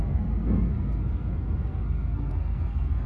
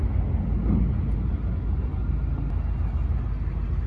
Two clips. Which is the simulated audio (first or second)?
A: first